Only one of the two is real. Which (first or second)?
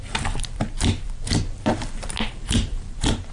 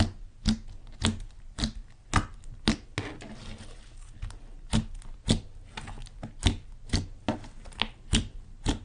second